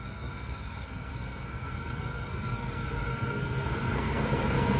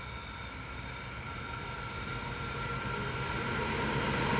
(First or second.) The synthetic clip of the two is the first